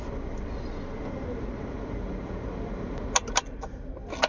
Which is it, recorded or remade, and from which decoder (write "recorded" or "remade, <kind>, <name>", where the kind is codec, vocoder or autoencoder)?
recorded